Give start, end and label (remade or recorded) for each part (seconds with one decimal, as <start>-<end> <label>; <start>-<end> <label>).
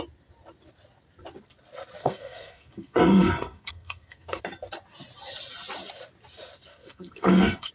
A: 0.0-2.0 recorded; 2.0-4.4 remade; 4.4-6.7 recorded; 6.7-7.7 remade